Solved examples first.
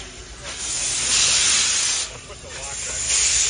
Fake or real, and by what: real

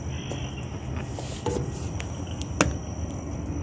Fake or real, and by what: real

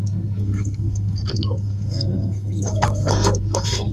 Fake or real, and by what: fake, codec, SNAC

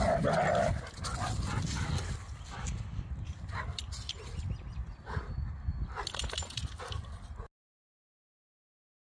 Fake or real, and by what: real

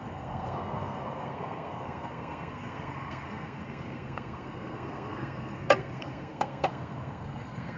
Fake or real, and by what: fake, codec, SNAC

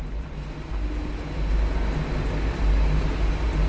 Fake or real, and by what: real